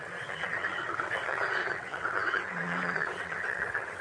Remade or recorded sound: remade